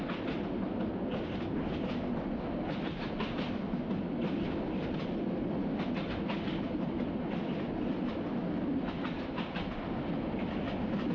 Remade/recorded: recorded